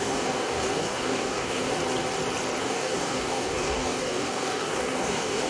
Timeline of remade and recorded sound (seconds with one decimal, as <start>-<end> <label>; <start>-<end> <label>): 0.0-1.8 remade; 1.8-2.6 recorded; 2.6-5.5 remade